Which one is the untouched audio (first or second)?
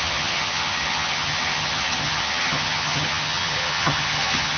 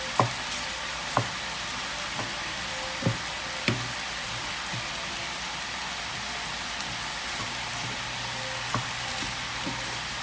second